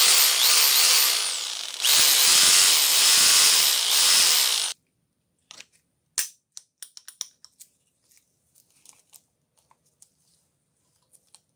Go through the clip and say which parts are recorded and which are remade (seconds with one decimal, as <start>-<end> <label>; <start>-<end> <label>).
0.0-2.9 recorded; 2.9-5.0 remade; 5.0-11.6 recorded